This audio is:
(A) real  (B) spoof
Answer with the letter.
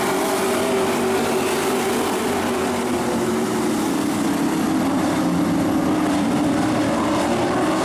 A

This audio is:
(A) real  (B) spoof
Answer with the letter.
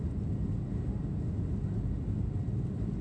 A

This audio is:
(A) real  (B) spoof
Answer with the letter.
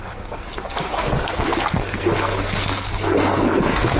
B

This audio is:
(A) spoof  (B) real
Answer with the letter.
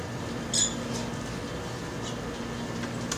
B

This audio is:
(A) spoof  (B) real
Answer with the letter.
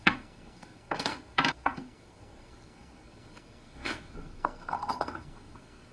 A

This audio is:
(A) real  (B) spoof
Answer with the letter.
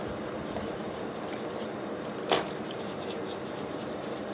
A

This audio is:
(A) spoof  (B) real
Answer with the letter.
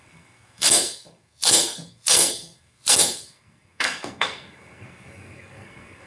A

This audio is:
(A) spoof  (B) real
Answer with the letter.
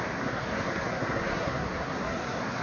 A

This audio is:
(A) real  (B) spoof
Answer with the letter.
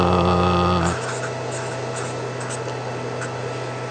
A